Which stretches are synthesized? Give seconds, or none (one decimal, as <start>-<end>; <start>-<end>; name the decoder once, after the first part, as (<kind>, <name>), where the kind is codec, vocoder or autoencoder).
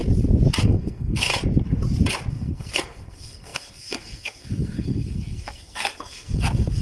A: 0.6-1.3 (codec, SNAC); 2.3-6.8